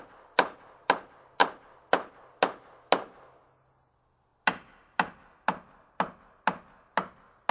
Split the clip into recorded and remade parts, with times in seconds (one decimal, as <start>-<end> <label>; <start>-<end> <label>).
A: 0.0-7.5 recorded